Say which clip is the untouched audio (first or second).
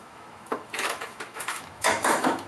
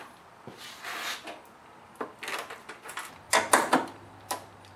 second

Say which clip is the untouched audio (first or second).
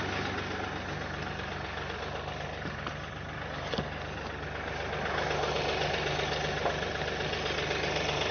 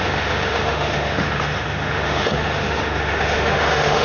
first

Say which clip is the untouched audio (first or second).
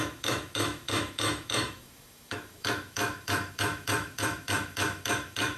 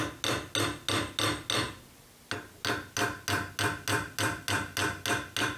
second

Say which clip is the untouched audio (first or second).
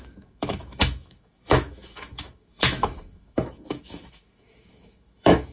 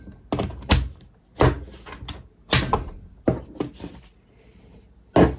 second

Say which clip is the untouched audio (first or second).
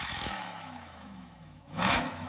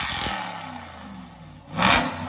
second